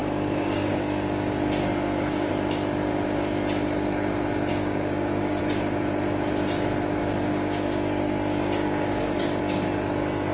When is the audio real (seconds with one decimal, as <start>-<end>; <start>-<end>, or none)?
2.3-4.5; 5.4-7.0; 9.4-10.3